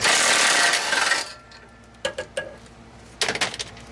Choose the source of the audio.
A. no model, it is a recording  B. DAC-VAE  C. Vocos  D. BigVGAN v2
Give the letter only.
A